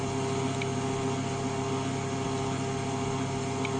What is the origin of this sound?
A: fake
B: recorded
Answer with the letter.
B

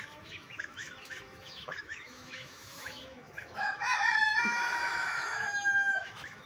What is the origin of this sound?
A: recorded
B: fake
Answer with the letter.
B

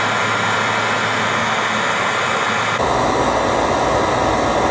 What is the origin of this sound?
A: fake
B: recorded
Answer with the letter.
B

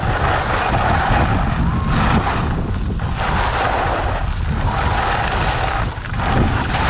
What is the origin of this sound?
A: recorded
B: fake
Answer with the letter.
A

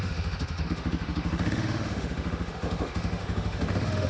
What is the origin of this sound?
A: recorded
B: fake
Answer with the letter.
B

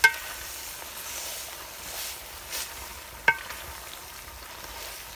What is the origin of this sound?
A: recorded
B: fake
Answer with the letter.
A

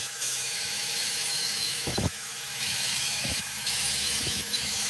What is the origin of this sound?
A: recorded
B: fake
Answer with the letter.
B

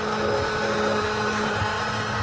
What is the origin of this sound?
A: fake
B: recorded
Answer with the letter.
B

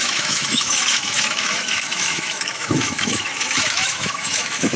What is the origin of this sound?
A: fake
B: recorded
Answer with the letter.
A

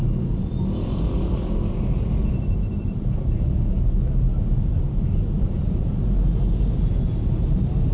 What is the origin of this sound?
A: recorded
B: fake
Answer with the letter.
A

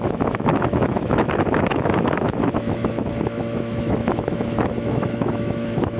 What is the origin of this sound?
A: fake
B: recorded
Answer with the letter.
A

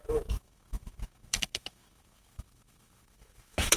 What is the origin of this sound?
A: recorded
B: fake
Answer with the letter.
B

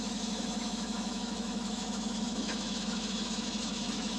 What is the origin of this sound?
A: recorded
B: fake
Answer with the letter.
B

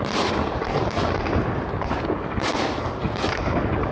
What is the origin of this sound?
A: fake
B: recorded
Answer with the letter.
B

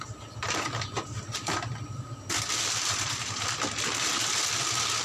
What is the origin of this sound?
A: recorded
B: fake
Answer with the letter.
A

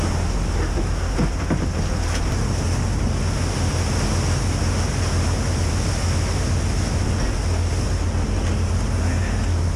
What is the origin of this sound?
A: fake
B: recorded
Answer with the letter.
B